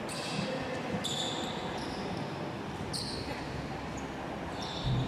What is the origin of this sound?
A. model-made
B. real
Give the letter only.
B